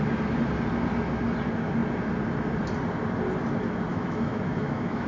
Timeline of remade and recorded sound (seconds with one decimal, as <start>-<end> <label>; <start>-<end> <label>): 0.0-3.9 recorded; 3.9-5.1 remade